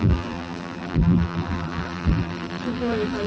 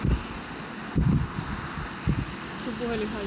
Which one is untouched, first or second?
second